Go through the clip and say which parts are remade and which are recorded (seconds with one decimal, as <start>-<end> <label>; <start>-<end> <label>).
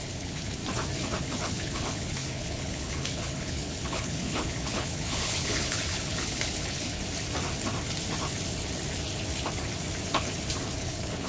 0.0-0.6 remade; 0.6-1.2 recorded; 1.2-7.0 remade; 7.0-10.8 recorded; 10.8-11.3 remade